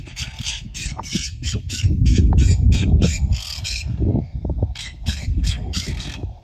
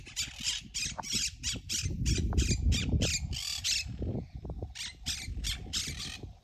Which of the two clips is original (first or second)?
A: second